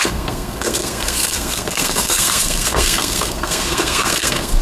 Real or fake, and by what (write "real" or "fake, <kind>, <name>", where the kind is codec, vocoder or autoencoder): fake, codec, SNAC